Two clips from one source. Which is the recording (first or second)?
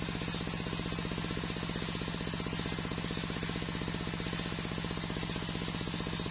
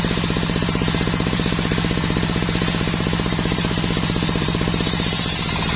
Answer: first